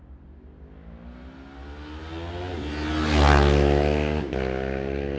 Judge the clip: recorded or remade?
recorded